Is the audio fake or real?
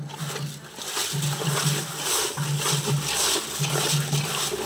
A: real